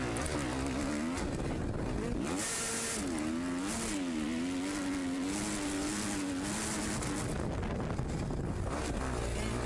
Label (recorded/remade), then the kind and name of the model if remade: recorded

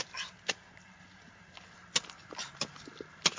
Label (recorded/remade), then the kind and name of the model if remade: recorded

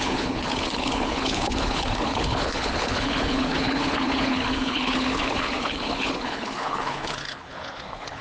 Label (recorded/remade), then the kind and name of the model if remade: remade, codec, HILCodec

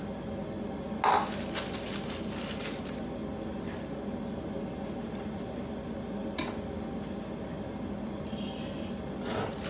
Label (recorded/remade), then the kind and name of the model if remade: recorded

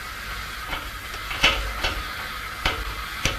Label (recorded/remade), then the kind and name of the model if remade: recorded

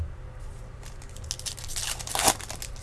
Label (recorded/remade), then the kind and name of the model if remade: recorded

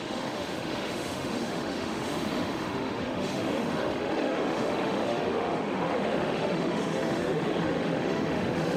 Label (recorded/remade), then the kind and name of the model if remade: remade, autoencoder, DAC-VAE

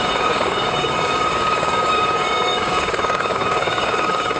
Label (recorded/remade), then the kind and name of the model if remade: remade, codec, DAC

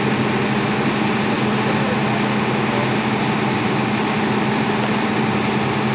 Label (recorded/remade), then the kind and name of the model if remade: recorded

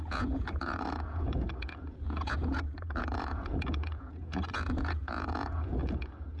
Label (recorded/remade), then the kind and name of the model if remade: remade, vocoder, Vocos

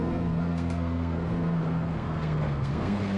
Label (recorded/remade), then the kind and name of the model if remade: remade, codec, SNAC